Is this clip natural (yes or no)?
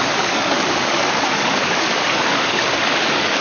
no